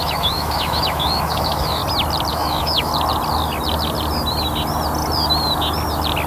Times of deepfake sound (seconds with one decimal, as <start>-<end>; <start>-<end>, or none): 0.0-1.8; 2.3-2.9